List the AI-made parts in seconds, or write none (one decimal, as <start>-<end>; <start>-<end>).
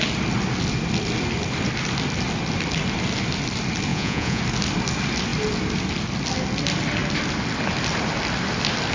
3.9-4.4